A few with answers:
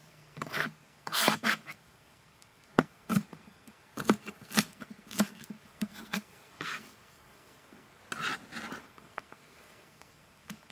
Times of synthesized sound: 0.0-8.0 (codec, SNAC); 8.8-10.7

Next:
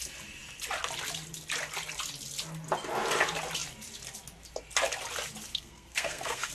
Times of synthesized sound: 5.5-6.5 (codec, SNAC)

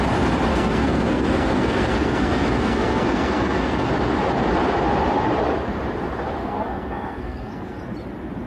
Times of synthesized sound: 0.5-3.9 (codec, SNAC); 6.4-7.8